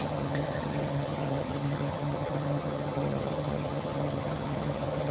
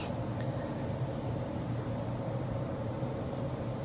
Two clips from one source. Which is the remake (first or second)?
first